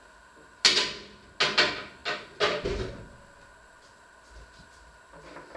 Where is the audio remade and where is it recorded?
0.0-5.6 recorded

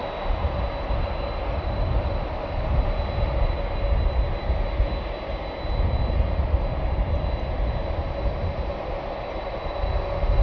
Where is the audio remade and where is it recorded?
0.0-10.4 recorded

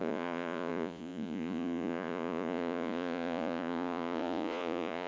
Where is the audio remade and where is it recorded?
0.0-5.1 remade

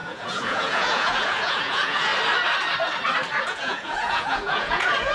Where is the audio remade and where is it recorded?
0.0-2.1 remade; 2.1-3.4 recorded; 3.4-5.1 remade

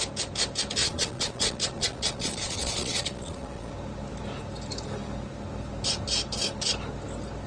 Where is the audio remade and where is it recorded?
0.0-0.8 recorded; 0.8-3.7 remade; 3.7-7.5 recorded

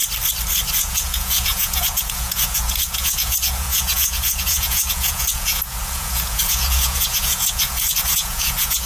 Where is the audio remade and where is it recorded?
0.0-0.7 recorded; 0.7-8.9 remade

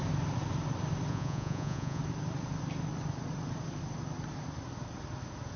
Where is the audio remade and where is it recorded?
0.0-1.1 recorded; 1.1-2.0 remade; 2.0-5.6 recorded